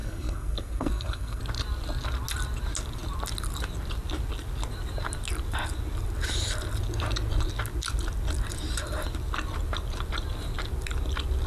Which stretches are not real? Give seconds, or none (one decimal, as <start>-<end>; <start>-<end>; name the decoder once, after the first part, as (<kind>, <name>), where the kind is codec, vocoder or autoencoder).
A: 0.0-1.4 (codec, SNAC)